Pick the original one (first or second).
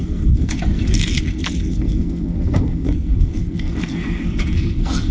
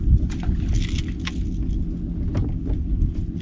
second